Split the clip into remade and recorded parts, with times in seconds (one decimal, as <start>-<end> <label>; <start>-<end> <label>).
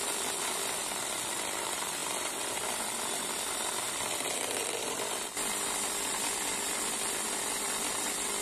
0.0-8.4 recorded